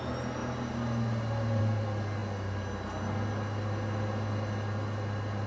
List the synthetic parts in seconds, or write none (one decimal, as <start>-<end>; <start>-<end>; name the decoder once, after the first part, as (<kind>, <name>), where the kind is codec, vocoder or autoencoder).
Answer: none